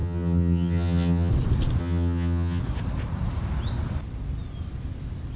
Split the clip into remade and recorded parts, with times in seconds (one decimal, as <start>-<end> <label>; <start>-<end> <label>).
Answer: 0.0-1.3 remade; 1.3-1.8 recorded; 1.8-2.6 remade; 2.6-5.4 recorded